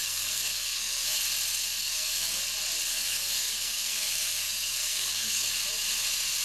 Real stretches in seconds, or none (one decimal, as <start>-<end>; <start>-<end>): 1.2-1.8; 2.4-2.9; 5.5-6.4